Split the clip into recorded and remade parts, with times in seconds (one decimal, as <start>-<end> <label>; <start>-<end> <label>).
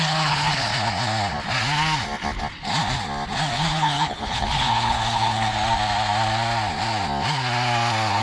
0.0-0.7 remade; 0.7-3.5 recorded; 3.5-5.5 remade; 5.5-8.2 recorded